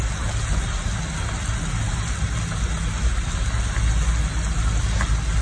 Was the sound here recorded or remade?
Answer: recorded